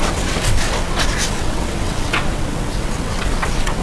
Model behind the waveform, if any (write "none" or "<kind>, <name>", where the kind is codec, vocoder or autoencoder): vocoder, WaveNeXt